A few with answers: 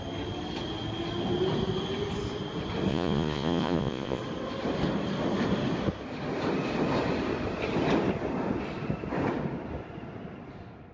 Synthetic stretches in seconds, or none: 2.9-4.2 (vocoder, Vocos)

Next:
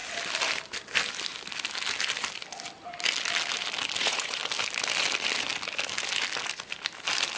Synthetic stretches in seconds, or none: 4.0-4.4 (vocoder, Vocos)

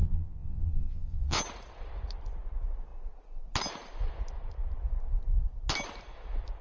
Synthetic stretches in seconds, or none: 0.0-1.4 (vocoder, Vocos)

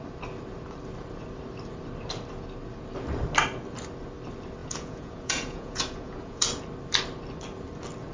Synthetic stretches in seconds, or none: 4.6-6.5 (vocoder, Vocos)

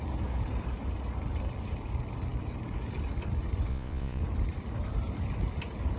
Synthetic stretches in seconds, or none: 3.7-4.2 (vocoder, Vocos)

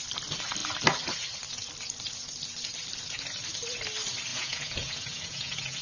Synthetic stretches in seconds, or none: 4.3-5.8 (vocoder, Vocos)